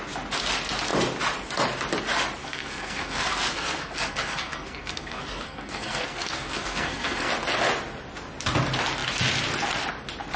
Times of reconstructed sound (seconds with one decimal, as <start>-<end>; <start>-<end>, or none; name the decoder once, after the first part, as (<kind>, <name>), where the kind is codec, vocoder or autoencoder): 2.4-7.3 (codec, SNAC)